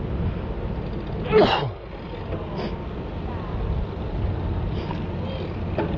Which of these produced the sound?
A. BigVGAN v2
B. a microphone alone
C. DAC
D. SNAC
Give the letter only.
B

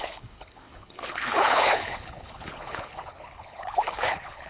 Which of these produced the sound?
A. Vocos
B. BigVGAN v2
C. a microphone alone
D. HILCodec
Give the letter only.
D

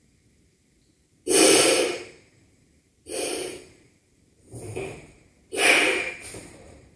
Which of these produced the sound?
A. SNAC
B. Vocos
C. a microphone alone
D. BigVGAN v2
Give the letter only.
D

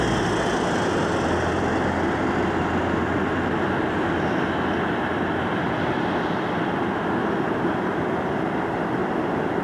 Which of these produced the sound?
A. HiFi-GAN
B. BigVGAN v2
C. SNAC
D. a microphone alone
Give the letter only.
D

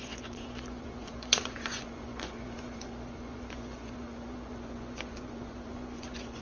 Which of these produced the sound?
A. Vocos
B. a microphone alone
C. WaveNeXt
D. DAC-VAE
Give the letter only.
A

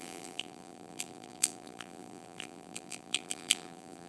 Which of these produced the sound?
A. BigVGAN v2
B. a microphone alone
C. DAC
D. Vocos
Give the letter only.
A